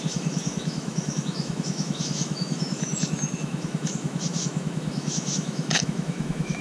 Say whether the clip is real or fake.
fake